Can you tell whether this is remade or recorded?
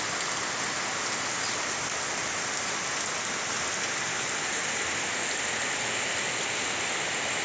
recorded